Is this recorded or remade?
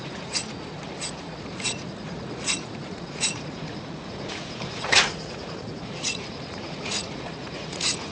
remade